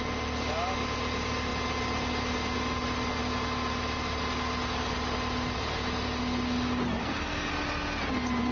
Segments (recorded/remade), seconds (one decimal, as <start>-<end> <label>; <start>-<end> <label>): 0.0-7.0 recorded; 7.0-7.5 remade; 7.5-8.5 recorded